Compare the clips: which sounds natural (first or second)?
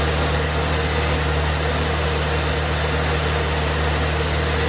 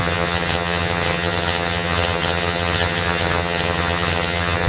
first